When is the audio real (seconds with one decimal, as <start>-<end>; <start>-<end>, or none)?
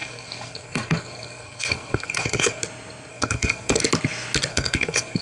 2.6-3.1; 3.8-4.5